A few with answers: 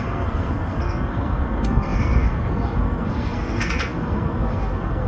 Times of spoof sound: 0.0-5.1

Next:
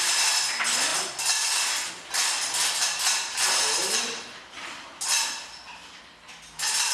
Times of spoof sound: none

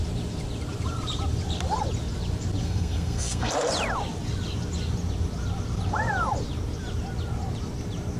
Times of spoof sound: 2.6-3.5